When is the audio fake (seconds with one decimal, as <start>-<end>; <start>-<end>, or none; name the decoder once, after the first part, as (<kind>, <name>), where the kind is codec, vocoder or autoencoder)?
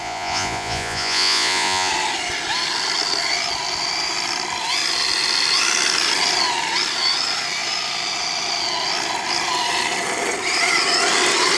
0.0-1.9 (vocoder, Vocos)